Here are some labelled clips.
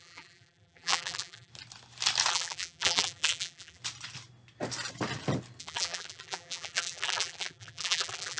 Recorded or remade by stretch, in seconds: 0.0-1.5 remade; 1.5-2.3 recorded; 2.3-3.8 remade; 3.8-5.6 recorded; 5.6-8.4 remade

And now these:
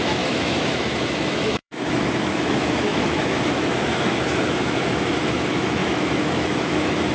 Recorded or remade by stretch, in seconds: 0.0-7.1 remade

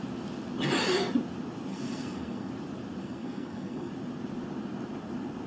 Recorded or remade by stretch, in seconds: 0.0-1.7 recorded; 1.7-2.5 remade; 2.5-3.0 recorded; 3.0-3.9 remade; 3.9-5.5 recorded

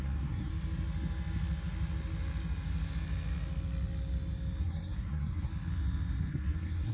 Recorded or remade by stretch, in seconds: 0.0-0.5 remade; 0.5-4.6 recorded; 4.6-5.5 remade; 5.5-6.3 recorded; 6.3-6.9 remade